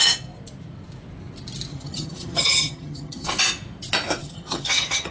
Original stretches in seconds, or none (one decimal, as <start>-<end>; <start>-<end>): 0.0-1.7; 3.3-4.2